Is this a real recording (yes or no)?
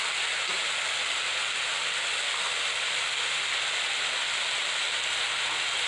yes